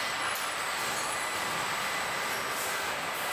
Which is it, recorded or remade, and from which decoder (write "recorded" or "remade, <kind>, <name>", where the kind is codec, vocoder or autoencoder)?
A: recorded